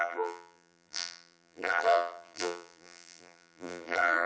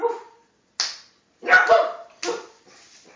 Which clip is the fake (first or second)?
first